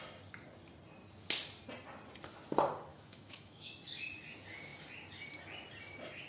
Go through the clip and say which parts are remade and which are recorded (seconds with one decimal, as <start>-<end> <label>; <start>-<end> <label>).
0.0-2.9 recorded; 2.9-3.7 remade; 3.7-6.3 recorded